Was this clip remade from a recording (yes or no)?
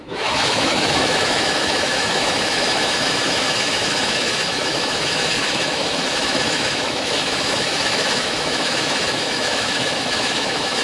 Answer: yes